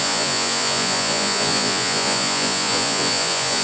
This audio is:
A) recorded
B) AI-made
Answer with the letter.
B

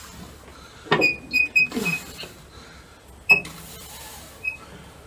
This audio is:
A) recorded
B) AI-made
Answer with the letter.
A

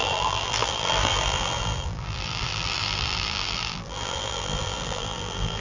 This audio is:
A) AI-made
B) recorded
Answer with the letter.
A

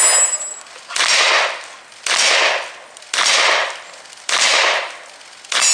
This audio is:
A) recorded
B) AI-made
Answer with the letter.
A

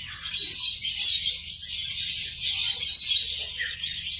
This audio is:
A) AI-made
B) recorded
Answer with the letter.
B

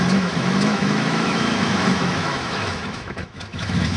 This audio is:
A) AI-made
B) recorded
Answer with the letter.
A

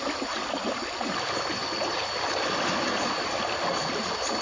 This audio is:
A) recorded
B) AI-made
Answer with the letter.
A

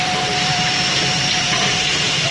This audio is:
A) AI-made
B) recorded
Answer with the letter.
A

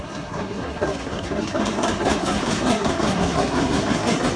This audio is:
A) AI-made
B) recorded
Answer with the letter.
A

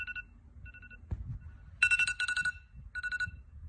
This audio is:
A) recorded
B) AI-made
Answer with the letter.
A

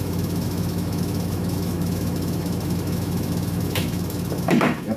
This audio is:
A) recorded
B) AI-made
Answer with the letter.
B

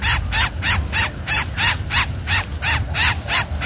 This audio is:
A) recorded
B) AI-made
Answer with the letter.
A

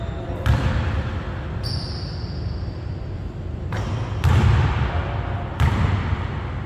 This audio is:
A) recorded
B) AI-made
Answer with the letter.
A